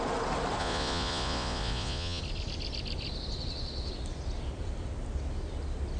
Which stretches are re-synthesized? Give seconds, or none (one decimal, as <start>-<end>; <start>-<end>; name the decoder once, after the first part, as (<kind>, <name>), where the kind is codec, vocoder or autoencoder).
0.6-2.2 (vocoder, Vocos)

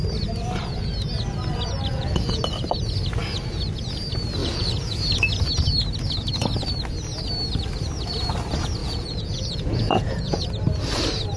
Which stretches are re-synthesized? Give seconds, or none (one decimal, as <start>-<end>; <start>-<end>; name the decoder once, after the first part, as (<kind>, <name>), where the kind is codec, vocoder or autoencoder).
1.9-2.4 (vocoder, Vocos); 4.4-5.0; 8.8-10.4

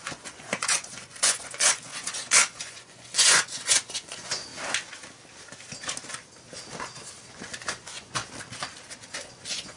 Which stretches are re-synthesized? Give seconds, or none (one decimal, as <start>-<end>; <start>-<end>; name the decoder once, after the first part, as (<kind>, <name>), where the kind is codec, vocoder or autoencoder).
0.0-4.5 (vocoder, Vocos); 7.3-8.2; 9.0-9.8

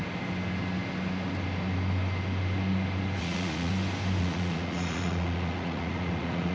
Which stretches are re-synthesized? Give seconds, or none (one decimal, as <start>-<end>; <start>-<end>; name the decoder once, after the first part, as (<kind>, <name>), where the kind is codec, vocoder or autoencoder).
3.2-3.7 (vocoder, Vocos); 4.2-6.5

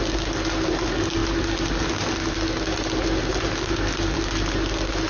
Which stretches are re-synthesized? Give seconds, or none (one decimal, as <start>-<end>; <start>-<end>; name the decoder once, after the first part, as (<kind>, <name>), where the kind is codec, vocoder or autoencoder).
none

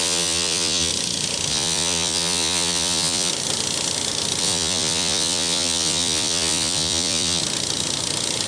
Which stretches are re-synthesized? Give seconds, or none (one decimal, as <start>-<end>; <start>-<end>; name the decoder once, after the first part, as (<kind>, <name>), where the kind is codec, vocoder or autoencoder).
0.0-0.9 (vocoder, Vocos); 1.5-3.3; 4.4-7.4

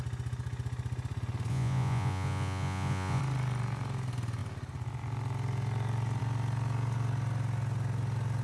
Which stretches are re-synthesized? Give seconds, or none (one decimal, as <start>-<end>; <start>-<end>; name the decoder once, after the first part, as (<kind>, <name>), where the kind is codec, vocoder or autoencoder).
1.5-3.2 (vocoder, Vocos)

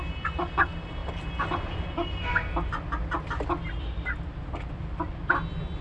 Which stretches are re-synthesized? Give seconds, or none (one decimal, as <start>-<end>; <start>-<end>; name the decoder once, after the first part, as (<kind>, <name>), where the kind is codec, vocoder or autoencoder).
none